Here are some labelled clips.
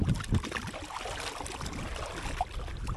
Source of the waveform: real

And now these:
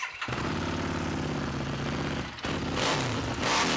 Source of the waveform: real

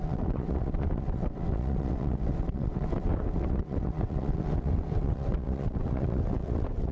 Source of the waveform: fake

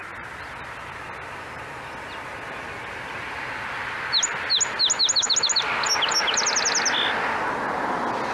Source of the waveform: real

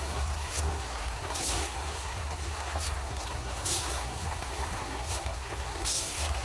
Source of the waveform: fake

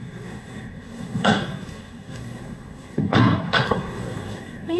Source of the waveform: fake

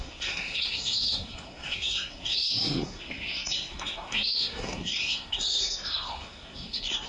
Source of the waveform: fake